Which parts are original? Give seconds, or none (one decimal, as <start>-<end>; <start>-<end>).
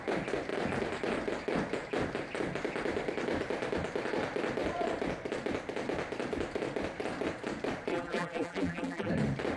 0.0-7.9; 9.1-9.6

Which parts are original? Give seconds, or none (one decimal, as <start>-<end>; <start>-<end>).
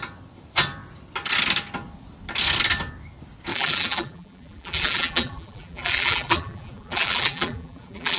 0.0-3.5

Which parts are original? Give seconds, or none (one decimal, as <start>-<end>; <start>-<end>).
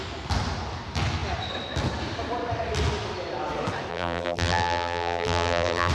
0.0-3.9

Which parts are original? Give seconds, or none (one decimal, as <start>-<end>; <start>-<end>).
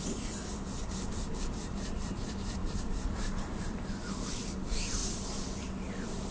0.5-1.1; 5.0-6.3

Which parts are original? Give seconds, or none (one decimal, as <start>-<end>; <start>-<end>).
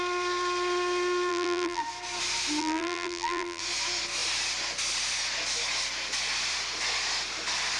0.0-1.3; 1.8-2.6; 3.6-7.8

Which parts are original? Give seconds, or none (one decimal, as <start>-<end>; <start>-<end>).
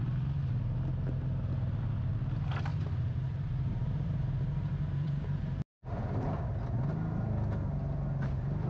0.0-2.7; 6.4-8.7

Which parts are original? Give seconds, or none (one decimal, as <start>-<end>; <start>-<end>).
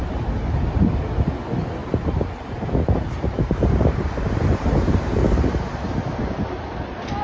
1.0-1.8; 5.2-7.2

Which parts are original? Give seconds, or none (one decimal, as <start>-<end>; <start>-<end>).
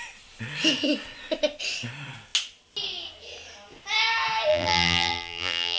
0.0-4.5